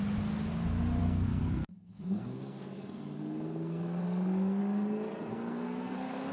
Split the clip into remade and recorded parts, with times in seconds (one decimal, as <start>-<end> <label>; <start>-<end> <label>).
0.0-1.0 recorded; 1.0-4.6 remade; 4.6-5.3 recorded; 5.3-6.3 remade